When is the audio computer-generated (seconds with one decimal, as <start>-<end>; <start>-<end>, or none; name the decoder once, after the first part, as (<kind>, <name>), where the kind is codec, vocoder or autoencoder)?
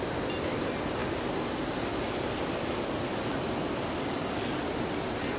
none